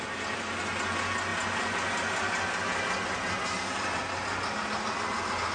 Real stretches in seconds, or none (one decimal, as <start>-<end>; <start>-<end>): 0.0-5.5